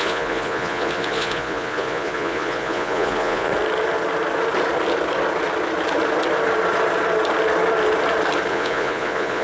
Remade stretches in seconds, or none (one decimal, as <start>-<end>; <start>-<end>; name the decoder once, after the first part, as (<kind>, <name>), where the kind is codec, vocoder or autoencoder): 0.0-3.5 (vocoder, Vocos); 8.5-9.4